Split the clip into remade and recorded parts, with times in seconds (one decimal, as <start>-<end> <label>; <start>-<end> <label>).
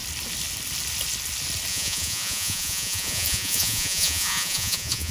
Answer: 0.0-1.7 recorded; 1.7-5.1 remade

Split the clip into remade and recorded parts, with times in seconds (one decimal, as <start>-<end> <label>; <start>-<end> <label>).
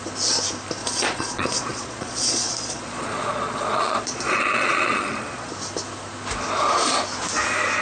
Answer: 0.0-0.8 recorded; 0.8-5.5 remade; 5.5-7.8 recorded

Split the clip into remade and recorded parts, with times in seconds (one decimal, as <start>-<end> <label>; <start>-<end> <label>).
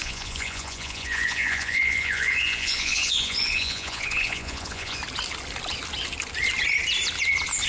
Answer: 0.0-5.0 remade; 5.0-7.7 recorded